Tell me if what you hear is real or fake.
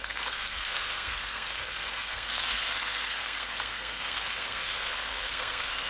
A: fake